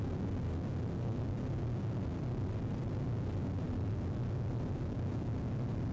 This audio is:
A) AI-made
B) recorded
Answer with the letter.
B